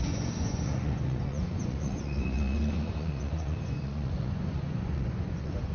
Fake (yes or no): yes